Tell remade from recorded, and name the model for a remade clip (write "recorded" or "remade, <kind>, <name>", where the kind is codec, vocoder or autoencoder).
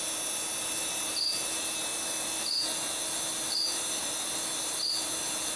recorded